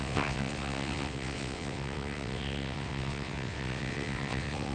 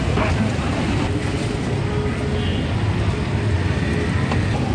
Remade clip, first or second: first